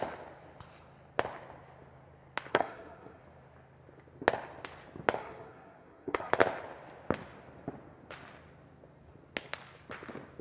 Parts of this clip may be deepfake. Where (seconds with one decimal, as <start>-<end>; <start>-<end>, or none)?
2.5-3.2; 5.2-6.3